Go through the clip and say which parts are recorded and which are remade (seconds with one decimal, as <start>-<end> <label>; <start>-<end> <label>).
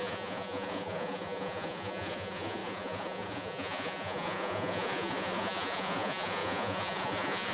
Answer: 0.0-7.5 remade